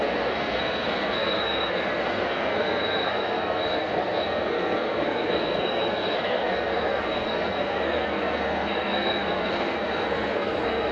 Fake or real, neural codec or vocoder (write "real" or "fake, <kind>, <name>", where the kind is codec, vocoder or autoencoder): fake, codec, SNAC